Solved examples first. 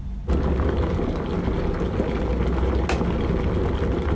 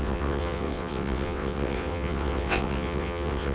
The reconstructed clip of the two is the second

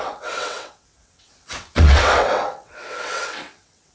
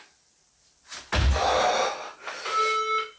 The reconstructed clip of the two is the first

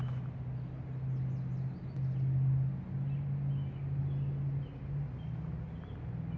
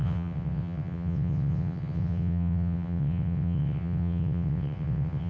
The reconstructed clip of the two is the second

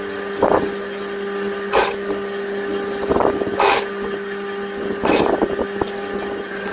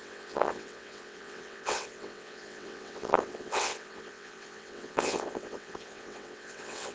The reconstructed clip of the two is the second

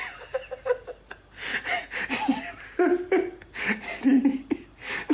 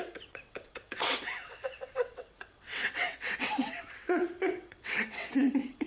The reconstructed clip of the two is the second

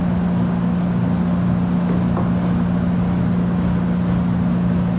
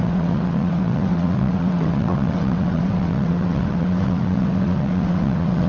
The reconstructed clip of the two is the second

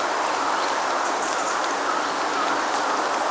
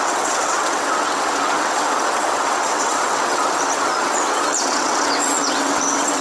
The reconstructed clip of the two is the second